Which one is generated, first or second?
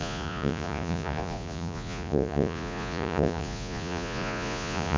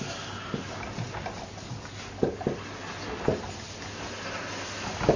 first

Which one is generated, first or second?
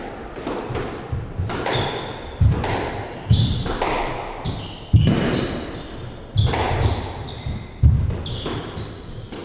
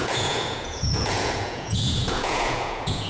second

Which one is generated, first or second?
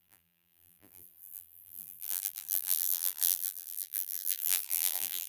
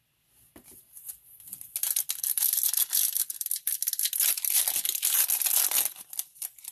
first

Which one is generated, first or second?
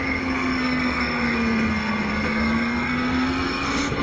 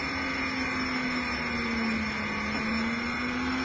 first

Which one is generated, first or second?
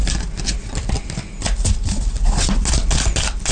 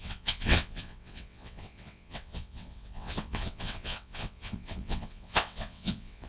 second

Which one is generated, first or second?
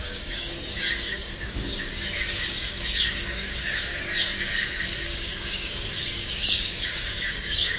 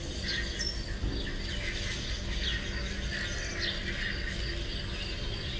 first